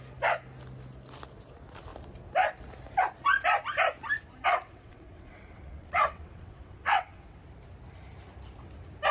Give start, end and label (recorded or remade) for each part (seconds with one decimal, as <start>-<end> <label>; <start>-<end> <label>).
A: 0.0-4.5 recorded; 4.5-7.4 remade; 7.4-9.1 recorded